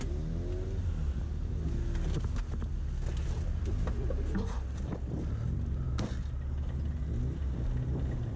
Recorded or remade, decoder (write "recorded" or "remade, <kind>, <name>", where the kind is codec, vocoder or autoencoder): recorded